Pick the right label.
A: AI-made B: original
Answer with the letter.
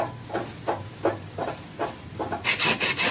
B